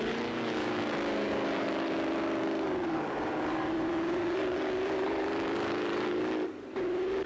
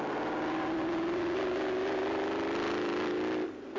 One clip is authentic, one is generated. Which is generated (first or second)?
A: first